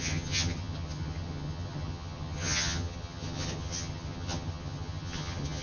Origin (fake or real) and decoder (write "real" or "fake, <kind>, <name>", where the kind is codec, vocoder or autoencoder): fake, vocoder, HiFi-GAN